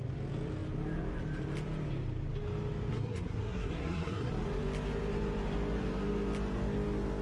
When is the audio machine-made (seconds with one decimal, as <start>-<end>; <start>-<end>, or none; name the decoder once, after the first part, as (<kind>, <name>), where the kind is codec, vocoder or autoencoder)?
2.9-4.3 (codec, SNAC)